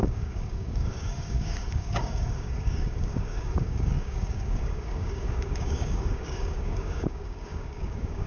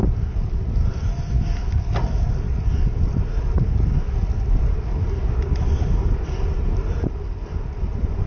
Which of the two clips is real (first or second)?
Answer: second